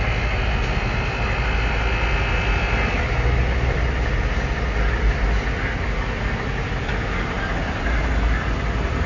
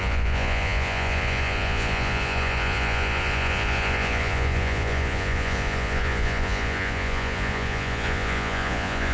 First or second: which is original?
first